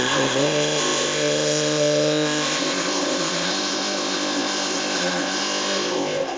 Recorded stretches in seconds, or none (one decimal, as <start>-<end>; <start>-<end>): none